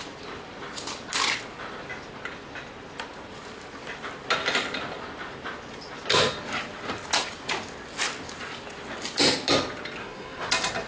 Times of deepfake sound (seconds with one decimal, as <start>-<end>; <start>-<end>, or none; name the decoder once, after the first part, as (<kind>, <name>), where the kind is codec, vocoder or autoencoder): 10.0-10.5 (codec, SNAC)